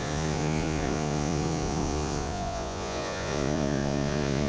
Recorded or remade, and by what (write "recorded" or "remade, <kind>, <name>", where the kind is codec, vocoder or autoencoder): remade, vocoder, Vocos